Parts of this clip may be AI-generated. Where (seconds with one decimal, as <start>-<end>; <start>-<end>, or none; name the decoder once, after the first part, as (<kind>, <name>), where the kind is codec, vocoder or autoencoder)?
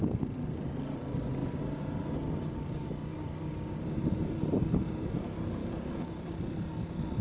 5.6-6.4 (codec, DAC)